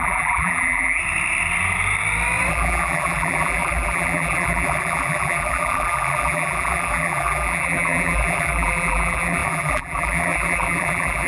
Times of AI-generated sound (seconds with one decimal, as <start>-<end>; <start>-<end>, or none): 0.0-1.0; 2.5-11.3